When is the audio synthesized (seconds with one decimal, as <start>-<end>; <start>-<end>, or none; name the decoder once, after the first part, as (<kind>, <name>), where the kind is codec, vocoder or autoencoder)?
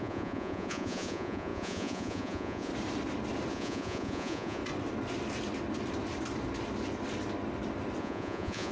0.0-2.7 (vocoder, Vocos); 3.5-4.6; 8.0-8.7